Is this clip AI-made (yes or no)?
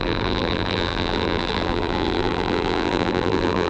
yes